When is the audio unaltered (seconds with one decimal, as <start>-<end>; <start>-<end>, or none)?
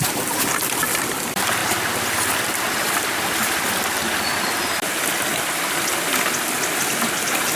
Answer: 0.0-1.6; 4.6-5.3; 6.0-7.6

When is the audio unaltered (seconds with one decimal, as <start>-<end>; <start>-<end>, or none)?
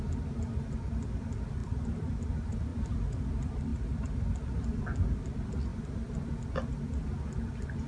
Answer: 0.0-1.6; 2.2-2.7; 3.3-5.7; 6.4-7.9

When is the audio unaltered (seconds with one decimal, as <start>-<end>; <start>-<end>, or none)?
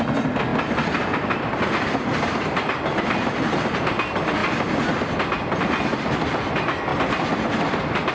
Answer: 0.0-0.5; 3.4-6.9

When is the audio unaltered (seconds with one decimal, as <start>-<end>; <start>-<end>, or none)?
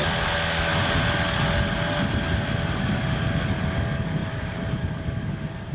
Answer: 0.0-4.2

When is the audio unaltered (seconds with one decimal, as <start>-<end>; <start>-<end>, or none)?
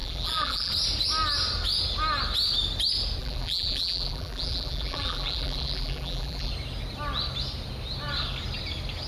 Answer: 0.7-3.2; 6.5-9.1